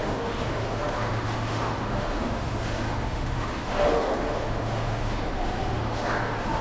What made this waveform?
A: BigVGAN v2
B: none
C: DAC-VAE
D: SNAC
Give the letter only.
C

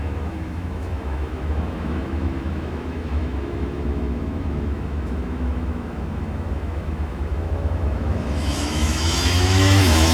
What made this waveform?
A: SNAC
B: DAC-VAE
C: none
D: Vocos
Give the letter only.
B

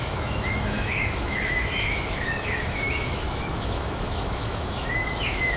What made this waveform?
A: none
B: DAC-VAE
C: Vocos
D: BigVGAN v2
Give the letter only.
B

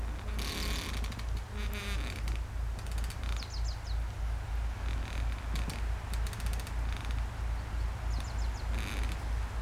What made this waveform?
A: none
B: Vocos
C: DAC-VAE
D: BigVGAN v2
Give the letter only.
A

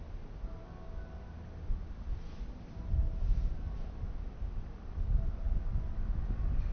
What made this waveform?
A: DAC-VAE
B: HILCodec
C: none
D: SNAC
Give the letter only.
C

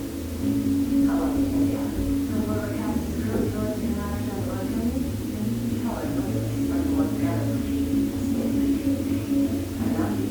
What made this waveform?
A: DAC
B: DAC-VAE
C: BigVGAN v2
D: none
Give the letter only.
D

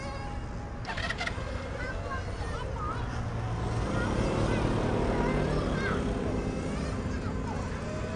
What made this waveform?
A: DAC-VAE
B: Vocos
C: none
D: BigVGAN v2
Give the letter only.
C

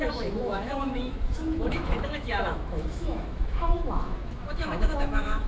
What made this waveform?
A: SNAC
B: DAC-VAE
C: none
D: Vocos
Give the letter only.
B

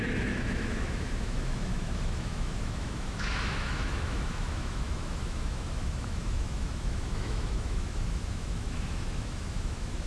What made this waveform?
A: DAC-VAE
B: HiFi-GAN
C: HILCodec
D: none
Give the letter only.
A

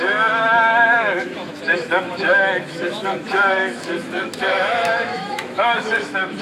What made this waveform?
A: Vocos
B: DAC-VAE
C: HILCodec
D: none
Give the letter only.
B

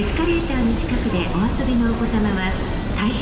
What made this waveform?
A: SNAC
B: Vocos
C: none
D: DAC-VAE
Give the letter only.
C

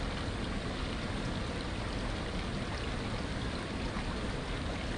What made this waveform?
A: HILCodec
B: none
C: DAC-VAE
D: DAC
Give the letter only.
B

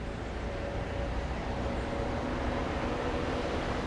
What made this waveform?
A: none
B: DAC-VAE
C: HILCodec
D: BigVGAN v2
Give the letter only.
A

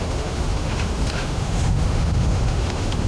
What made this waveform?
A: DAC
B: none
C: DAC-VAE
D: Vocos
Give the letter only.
C